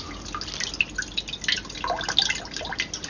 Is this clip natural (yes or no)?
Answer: yes